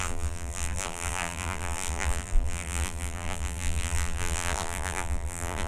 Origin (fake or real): fake